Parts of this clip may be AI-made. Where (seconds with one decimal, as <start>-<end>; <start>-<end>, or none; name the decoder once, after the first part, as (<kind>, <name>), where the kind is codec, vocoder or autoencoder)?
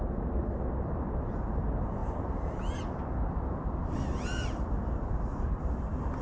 none